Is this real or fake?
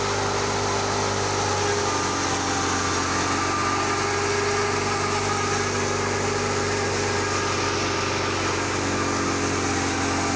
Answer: real